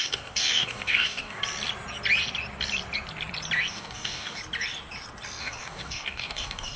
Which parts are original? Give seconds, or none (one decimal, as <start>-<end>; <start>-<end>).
1.4-3.7; 4.4-5.4